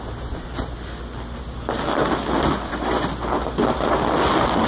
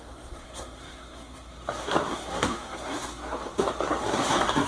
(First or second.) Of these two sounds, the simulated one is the second